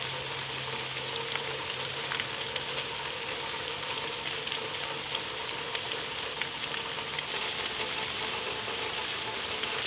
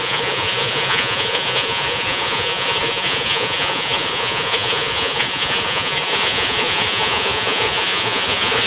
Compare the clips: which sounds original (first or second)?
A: first